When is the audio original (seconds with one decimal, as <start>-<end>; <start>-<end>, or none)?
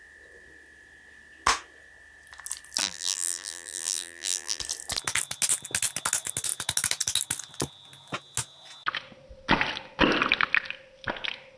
0.0-2.8; 4.6-11.6